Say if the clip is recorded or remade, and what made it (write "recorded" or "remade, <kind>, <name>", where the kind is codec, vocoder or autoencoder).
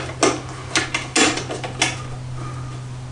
recorded